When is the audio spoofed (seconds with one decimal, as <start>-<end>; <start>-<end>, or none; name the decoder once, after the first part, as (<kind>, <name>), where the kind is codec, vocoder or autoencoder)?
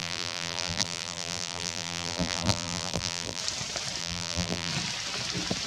0.0-3.4 (vocoder, BigVGAN v2); 4.0-4.7